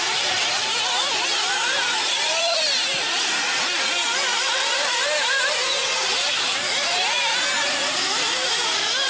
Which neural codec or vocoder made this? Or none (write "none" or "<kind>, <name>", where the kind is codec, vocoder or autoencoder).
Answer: vocoder, BigVGAN v2